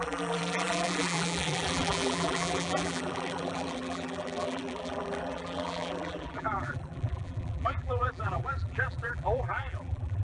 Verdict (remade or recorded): remade